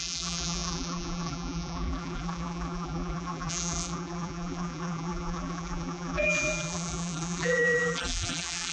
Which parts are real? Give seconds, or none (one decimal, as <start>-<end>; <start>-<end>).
none